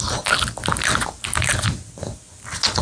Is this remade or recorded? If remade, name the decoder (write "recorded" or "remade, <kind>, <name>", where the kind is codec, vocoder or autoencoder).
recorded